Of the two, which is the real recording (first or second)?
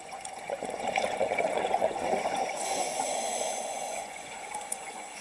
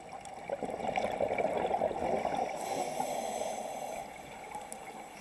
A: second